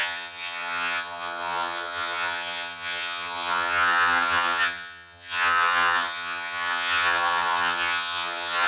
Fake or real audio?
fake